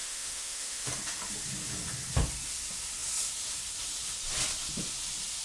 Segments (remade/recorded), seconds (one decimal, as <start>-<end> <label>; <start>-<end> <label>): 0.0-0.9 remade; 0.9-5.4 recorded